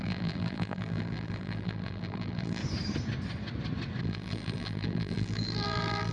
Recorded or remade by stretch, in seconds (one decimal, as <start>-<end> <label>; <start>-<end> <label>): 0.0-2.6 remade; 2.6-4.0 recorded; 4.0-6.1 remade